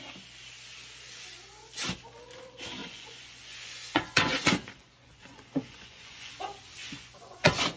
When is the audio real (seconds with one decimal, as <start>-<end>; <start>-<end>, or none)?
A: 0.0-2.8; 6.3-6.8